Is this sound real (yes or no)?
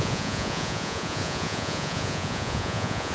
no